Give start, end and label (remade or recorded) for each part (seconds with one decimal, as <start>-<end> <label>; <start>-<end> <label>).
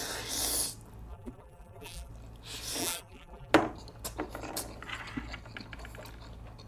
0.0-1.1 recorded; 1.1-2.1 remade; 2.1-2.8 recorded; 2.8-3.5 remade; 3.5-6.7 recorded